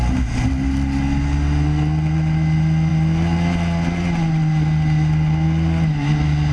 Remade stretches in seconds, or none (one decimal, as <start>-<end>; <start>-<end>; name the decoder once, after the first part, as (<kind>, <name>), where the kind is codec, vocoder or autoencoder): none